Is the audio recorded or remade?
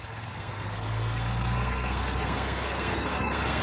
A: remade